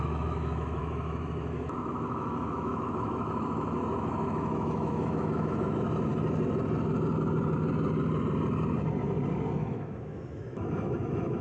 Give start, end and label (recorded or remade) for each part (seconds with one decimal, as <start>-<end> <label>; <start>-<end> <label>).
0.0-6.1 remade; 6.1-9.6 recorded; 9.6-11.4 remade

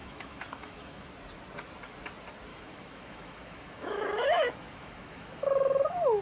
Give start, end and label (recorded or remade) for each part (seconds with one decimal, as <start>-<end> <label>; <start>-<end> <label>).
0.0-1.1 remade; 1.1-2.5 recorded; 2.5-6.2 remade

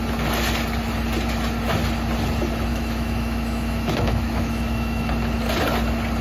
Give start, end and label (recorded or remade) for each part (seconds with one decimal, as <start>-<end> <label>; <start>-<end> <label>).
0.0-2.7 recorded; 2.7-5.1 remade; 5.1-6.2 recorded

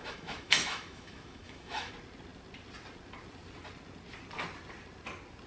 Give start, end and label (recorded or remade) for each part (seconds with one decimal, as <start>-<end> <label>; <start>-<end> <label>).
0.0-1.9 remade; 1.9-5.5 recorded

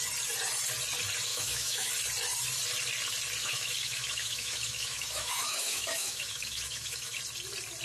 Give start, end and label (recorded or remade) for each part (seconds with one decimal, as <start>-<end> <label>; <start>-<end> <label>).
0.0-1.3 recorded; 1.3-1.9 remade; 1.9-3.4 recorded; 3.4-7.2 remade; 7.2-7.8 recorded

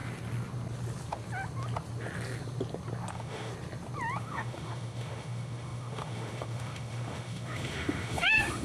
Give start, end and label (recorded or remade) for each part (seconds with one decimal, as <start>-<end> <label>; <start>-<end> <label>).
0.0-3.1 recorded; 3.1-3.5 remade; 3.5-4.2 recorded; 4.2-8.6 remade

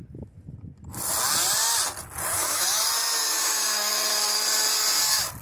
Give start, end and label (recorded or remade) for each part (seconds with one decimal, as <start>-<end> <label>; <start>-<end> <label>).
0.0-2.3 recorded; 2.3-2.8 remade; 2.8-3.2 recorded; 3.2-3.9 remade; 3.9-5.4 recorded